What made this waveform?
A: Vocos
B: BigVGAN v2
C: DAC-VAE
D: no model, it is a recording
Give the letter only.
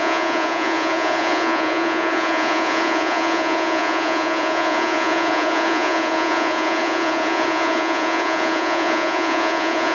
A